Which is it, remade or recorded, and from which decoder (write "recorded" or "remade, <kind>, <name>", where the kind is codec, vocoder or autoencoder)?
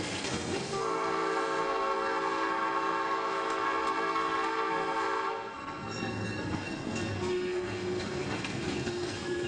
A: remade, codec, SNAC